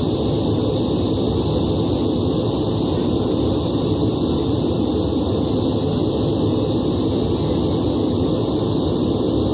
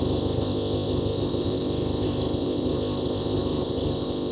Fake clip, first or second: second